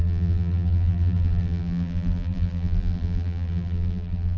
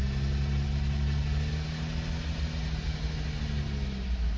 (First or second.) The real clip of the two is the second